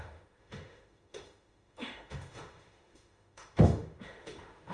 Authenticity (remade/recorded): remade